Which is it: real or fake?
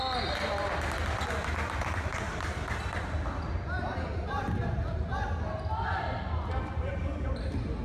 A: real